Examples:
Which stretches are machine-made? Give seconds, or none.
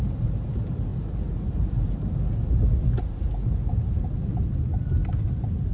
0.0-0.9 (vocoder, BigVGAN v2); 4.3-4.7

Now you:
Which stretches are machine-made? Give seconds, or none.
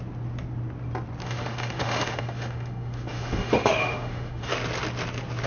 1.2-4.5 (autoencoder, DAC-VAE)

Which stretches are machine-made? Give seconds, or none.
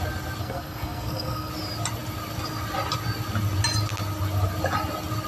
0.4-1.5 (codec, SNAC)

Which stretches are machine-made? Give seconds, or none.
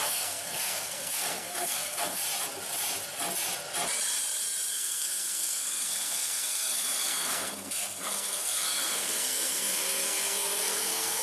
0.0-2.2 (codec, SNAC); 4.7-11.2